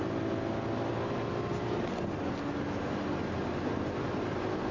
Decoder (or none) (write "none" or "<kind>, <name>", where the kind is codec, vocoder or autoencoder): none